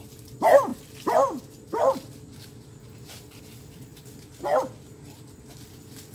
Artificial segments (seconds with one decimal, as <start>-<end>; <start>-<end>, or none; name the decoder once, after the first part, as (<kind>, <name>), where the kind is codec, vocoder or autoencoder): none